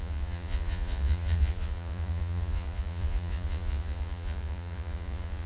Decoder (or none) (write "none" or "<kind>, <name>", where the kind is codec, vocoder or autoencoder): vocoder, Vocos